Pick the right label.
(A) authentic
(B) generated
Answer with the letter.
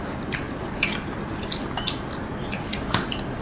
A